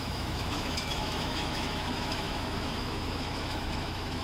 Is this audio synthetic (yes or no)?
yes